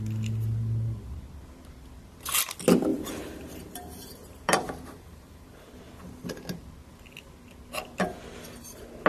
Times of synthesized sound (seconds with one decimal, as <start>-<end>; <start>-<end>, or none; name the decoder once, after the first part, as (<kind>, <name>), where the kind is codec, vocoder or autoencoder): 2.9-5.8 (vocoder, BigVGAN v2)